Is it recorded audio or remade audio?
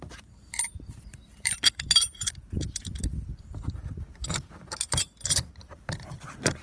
remade